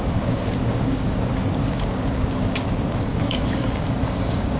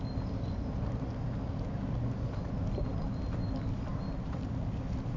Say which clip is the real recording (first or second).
second